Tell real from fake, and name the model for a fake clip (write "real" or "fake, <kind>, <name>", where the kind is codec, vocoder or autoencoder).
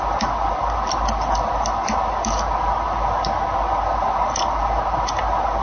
real